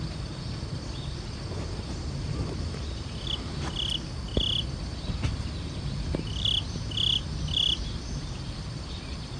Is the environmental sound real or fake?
real